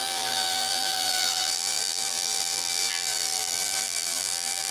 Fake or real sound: fake